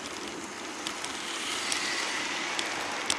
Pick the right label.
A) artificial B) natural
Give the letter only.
B